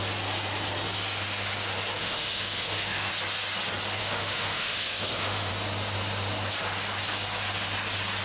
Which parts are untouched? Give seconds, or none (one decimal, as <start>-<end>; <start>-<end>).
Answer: 0.0-2.0; 3.1-4.0; 5.5-8.2